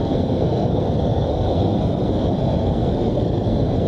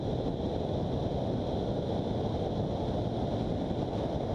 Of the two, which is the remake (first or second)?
first